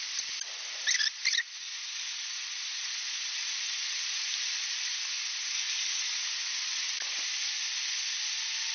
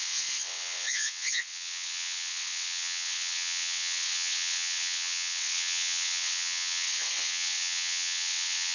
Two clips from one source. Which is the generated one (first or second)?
second